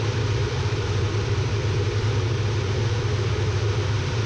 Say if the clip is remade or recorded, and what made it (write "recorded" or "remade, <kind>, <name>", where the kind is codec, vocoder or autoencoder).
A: remade, vocoder, BigVGAN v2